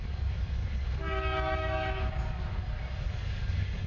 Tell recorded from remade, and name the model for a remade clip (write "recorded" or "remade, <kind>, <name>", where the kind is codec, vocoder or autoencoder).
remade, codec, DAC